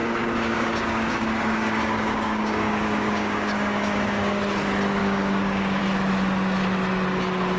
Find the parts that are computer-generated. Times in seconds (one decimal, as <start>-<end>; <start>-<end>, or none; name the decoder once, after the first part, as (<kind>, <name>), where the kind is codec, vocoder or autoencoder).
0.0-4.4 (codec, DAC); 5.0-5.8